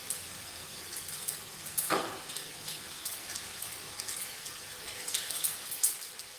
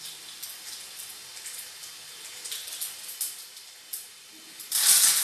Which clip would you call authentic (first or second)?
second